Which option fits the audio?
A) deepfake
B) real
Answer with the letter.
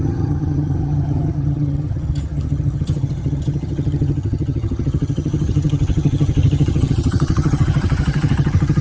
A